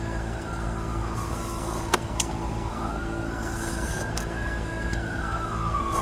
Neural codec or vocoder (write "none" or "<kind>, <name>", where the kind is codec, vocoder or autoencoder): codec, SNAC